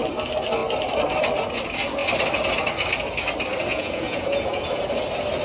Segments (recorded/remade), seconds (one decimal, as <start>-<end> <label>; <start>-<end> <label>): 0.0-3.7 recorded; 3.7-4.6 remade; 4.6-5.4 recorded